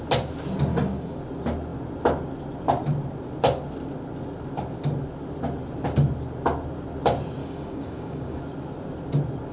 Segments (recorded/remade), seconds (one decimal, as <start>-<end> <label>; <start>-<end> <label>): 0.0-0.7 recorded; 0.7-1.2 remade; 1.2-7.4 recorded; 7.4-8.4 remade; 8.4-9.5 recorded